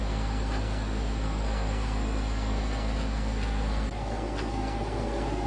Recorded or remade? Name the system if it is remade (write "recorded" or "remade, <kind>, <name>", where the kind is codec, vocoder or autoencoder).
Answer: remade, codec, SNAC